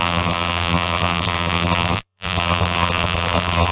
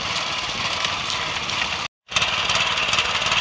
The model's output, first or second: first